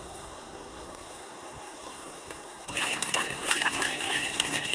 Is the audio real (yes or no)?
no